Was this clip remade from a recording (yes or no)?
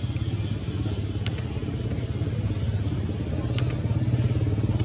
no